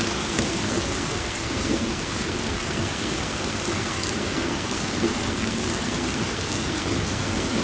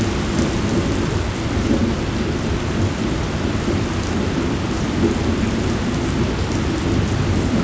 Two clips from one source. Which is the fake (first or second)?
first